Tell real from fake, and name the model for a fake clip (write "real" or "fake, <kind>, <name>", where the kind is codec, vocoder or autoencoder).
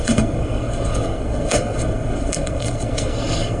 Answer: fake, codec, SNAC